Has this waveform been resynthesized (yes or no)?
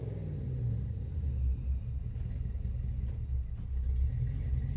no